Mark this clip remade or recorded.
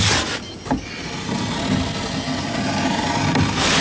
recorded